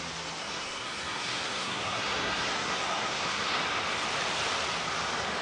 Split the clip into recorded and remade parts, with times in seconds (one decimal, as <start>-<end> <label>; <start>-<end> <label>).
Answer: 0.0-0.4 recorded; 0.4-3.6 remade; 3.6-5.4 recorded